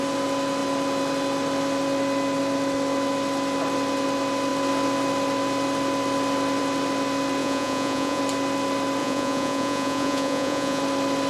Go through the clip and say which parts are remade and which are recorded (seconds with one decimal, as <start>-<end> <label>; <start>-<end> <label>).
0.0-7.4 recorded; 7.4-8.2 remade; 8.2-9.0 recorded; 9.0-10.8 remade; 10.8-11.3 recorded